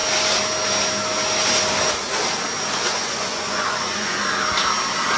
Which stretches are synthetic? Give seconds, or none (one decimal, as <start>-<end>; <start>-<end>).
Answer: 2.9-4.2